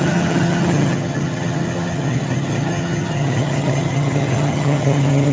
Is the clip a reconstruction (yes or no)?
yes